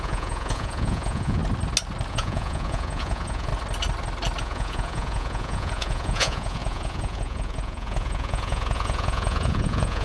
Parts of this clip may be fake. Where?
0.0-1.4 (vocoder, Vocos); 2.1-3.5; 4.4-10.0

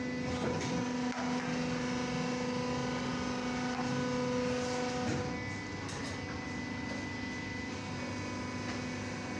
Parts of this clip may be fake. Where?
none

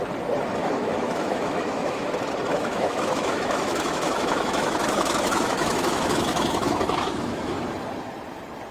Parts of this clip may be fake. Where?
0.6-2.1 (autoencoder, DAC-VAE); 2.5-7.5